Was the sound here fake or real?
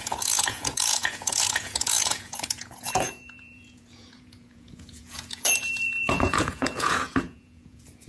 fake